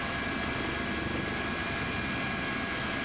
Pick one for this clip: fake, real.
real